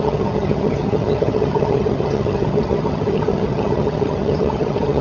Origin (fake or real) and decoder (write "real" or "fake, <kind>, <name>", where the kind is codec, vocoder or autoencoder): fake, vocoder, HiFi-GAN